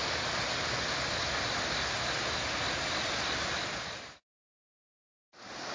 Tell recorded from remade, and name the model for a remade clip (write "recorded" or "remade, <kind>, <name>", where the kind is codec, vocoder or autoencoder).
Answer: recorded